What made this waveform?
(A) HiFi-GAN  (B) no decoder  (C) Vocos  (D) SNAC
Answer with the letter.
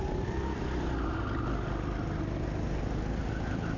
B